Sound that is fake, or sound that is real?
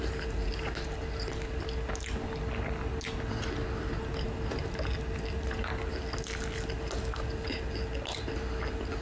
real